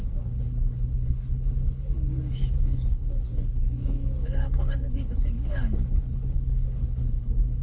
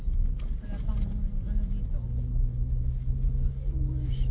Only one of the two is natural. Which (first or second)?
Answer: second